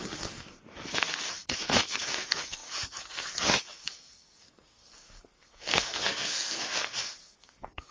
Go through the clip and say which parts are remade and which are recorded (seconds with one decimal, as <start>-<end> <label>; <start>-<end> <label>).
0.0-7.9 remade